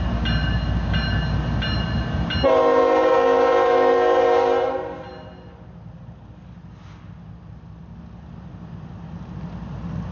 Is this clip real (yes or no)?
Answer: yes